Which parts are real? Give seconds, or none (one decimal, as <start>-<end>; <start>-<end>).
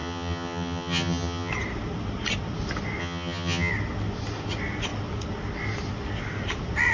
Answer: 1.5-3.0; 3.7-6.9